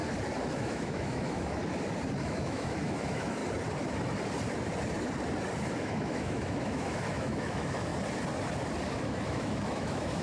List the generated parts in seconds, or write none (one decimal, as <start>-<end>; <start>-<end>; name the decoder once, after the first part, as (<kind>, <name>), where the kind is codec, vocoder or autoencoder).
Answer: 0.5-1.6 (autoencoder, DAC-VAE); 2.2-3.4; 5.7-7.9; 8.9-10.2